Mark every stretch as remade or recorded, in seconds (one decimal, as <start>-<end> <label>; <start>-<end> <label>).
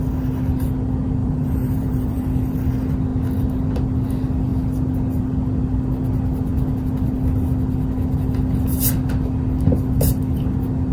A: 0.0-1.2 recorded; 1.2-2.2 remade; 2.2-10.9 recorded